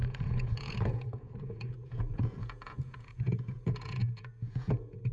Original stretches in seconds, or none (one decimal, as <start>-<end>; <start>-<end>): none